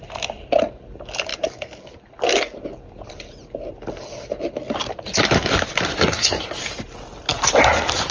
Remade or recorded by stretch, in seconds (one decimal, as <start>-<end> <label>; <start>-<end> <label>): 0.0-5.9 recorded; 5.9-6.5 remade; 6.5-8.1 recorded

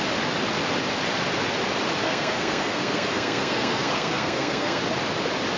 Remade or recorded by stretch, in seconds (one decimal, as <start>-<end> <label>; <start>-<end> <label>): 0.0-2.0 recorded; 2.0-4.8 remade; 4.8-5.6 recorded